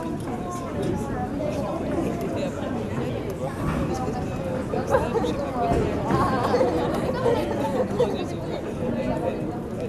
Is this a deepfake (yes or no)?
no